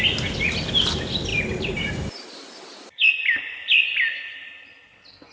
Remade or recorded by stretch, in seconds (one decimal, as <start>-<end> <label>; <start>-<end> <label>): 0.0-1.3 recorded; 1.3-2.5 remade; 2.5-3.2 recorded; 3.2-4.5 remade; 4.5-5.3 recorded

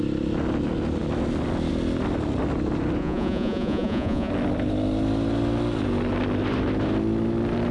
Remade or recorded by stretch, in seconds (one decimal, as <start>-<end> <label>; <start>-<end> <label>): 0.0-3.0 recorded; 3.0-4.3 remade; 4.3-7.7 recorded